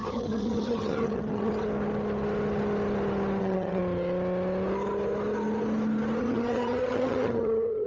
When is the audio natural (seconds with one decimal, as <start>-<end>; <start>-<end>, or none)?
1.5-3.4; 3.8-6.2